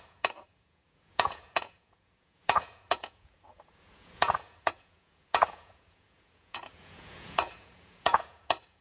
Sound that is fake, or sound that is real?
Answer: fake